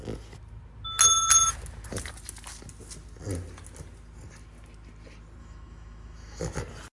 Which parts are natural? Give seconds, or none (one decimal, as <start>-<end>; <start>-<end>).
0.0-5.4; 6.4-6.9